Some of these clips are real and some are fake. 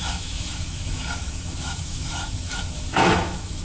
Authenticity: fake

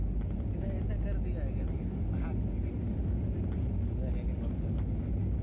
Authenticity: real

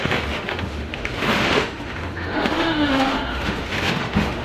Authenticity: fake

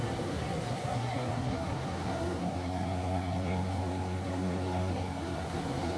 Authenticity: fake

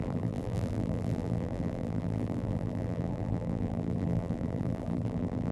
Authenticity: fake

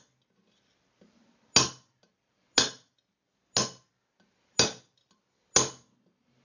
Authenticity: real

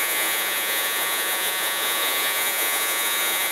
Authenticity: fake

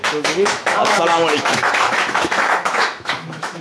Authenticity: fake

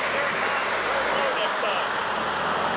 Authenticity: real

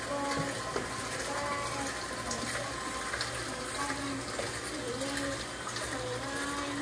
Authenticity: real